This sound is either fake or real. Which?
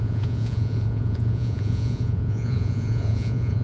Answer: fake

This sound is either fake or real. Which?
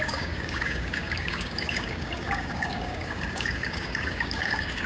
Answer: fake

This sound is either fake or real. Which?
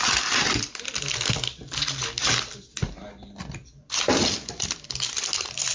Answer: real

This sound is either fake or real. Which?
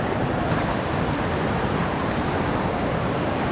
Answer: real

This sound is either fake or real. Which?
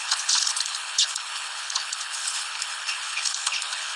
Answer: fake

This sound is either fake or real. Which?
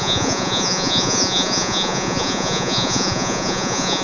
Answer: fake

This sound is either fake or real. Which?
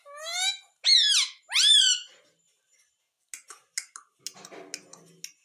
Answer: real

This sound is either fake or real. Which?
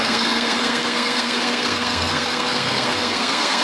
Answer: fake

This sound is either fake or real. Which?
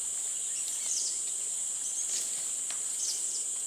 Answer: real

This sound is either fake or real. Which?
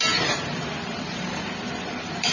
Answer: fake